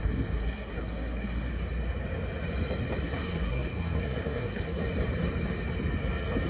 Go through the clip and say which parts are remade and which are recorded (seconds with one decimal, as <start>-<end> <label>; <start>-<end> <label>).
0.0-1.5 remade; 1.5-3.0 recorded; 3.0-4.8 remade; 4.8-6.5 recorded